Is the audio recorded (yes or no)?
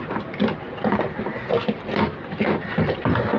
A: no